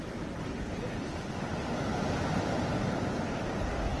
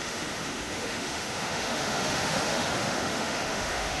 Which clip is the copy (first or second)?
second